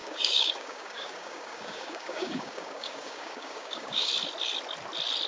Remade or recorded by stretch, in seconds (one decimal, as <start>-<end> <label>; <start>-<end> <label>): 0.0-4.1 remade; 4.1-5.3 recorded